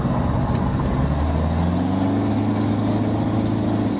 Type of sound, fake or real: real